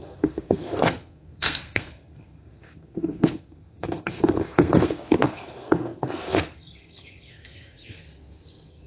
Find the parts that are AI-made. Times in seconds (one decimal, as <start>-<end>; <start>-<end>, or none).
0.0-8.9